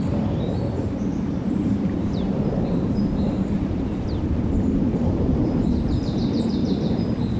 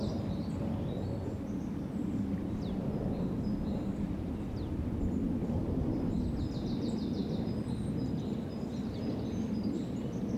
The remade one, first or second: first